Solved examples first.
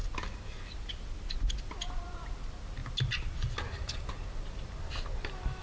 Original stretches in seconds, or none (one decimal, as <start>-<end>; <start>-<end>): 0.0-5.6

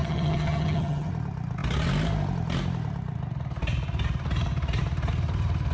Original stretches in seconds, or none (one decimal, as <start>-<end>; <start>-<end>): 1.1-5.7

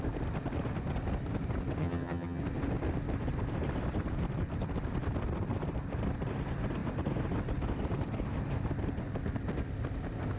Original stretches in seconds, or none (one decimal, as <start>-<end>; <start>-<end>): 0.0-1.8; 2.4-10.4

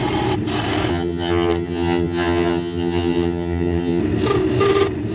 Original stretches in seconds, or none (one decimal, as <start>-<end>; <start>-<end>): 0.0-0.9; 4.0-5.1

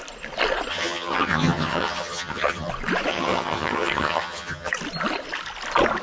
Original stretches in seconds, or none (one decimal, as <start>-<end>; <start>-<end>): 0.0-0.7; 2.7-3.1; 4.7-6.0